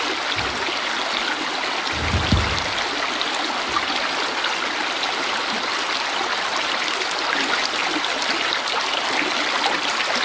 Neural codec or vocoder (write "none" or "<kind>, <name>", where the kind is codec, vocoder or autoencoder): none